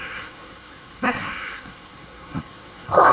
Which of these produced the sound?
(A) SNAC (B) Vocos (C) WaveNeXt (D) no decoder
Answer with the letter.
A